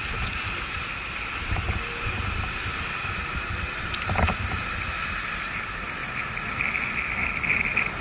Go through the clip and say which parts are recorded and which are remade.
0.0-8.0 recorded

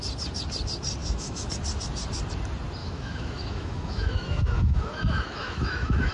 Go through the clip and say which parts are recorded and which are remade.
0.0-1.0 recorded; 1.0-1.5 remade; 1.5-2.8 recorded; 2.8-6.1 remade

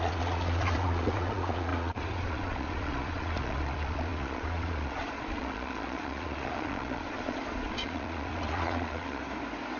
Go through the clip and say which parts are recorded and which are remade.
0.0-9.2 remade; 9.2-9.8 recorded

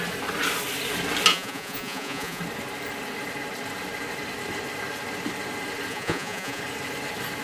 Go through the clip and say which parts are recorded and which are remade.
0.0-1.3 recorded; 1.3-2.4 remade; 2.4-5.9 recorded; 5.9-6.6 remade; 6.6-7.4 recorded

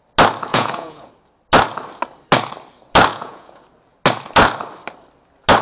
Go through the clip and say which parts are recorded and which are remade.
0.0-0.5 recorded; 0.5-1.1 remade; 1.1-3.1 recorded; 3.1-3.6 remade; 3.6-5.6 recorded